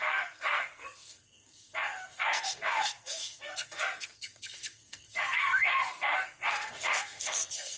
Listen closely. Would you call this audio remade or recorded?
remade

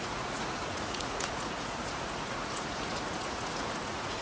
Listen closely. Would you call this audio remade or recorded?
remade